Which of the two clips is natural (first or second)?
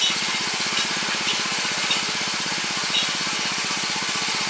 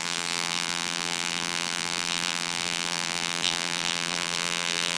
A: first